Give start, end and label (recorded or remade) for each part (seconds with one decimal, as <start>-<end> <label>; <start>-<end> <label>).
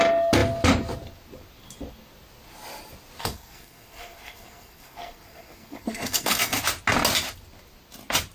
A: 0.0-3.2 recorded; 3.2-6.6 remade; 6.6-8.3 recorded